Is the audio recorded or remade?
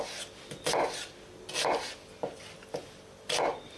recorded